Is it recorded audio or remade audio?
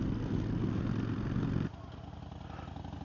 recorded